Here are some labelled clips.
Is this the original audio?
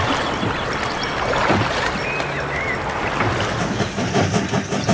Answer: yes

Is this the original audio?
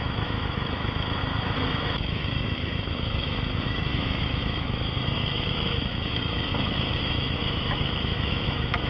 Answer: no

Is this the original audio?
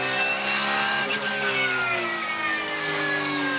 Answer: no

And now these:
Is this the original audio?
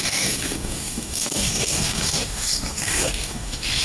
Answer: no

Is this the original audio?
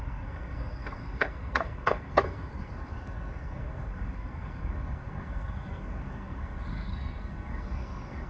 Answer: no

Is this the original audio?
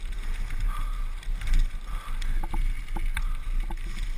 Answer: yes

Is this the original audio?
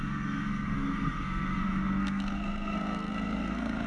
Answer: no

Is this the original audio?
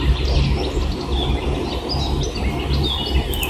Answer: yes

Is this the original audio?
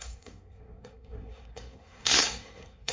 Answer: no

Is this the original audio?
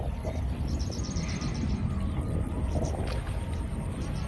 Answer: yes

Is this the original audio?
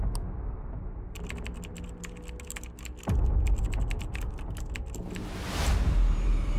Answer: yes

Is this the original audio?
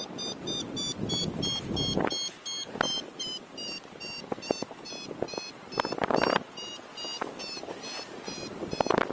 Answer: yes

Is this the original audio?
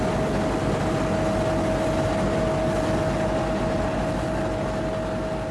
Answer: yes